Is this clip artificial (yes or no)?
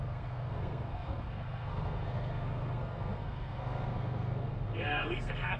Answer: yes